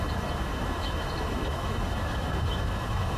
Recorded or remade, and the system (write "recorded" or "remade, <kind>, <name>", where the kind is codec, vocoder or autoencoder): remade, autoencoder, DAC-VAE